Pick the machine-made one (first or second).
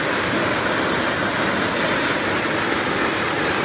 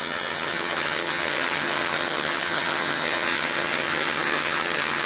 second